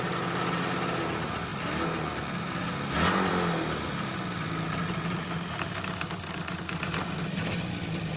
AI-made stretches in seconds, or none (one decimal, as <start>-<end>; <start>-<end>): none